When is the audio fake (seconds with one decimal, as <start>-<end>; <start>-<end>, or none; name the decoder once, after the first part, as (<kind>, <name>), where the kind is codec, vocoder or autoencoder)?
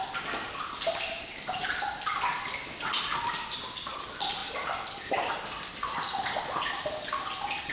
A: none